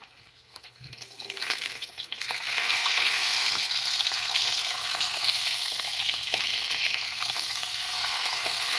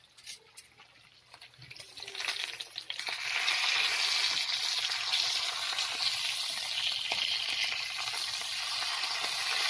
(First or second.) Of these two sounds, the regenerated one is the first